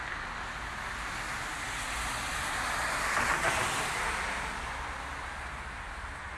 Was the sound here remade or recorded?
recorded